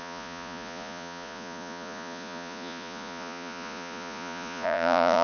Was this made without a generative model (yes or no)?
no